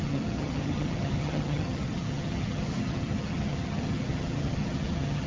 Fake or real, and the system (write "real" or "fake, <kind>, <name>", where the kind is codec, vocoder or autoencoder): fake, vocoder, HiFi-GAN